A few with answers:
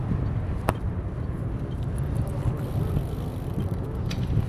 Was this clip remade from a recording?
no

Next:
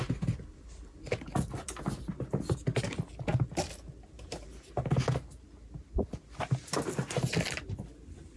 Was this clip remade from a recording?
no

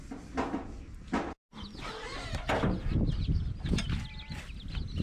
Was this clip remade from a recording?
no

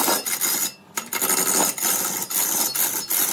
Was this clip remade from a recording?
no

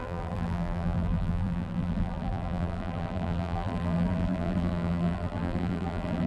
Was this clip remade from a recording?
yes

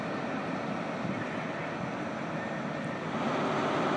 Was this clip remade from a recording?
no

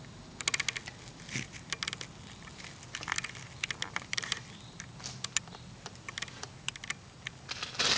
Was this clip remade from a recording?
no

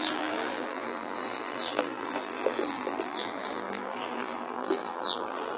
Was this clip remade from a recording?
yes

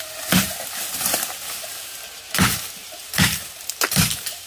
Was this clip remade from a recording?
no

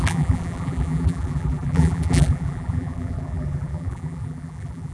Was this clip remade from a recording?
yes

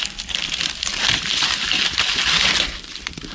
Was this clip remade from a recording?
no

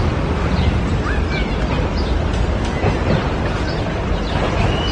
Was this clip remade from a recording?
no